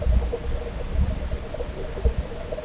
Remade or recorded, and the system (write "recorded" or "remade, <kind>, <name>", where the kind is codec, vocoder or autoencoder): recorded